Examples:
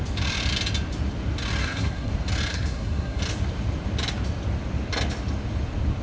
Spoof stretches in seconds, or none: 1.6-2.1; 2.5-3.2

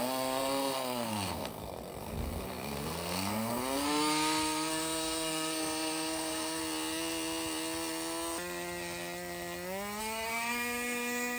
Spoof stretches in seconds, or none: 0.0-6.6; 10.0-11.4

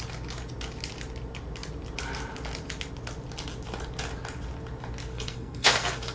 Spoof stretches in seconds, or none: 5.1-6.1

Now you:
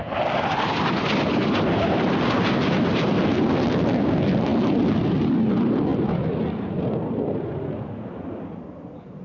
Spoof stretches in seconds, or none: none

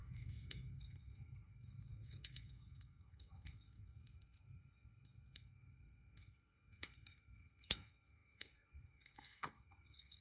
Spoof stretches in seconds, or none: 0.0-10.2

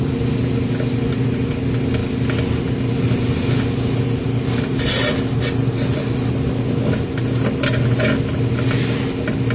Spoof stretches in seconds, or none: none

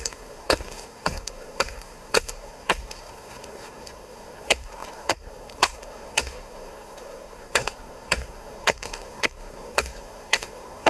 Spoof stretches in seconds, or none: 0.0-10.9